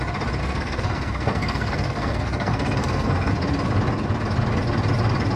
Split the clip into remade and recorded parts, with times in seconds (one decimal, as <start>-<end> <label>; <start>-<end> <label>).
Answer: 0.0-0.4 recorded; 0.4-3.3 remade; 3.3-5.4 recorded